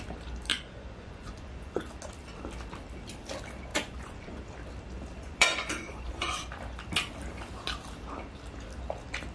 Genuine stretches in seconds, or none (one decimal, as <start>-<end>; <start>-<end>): 0.0-0.5; 1.9-3.7; 4.4-5.1; 6.5-9.3